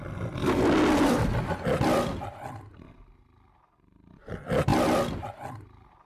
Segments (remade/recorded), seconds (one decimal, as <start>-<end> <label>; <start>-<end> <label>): 0.0-6.0 recorded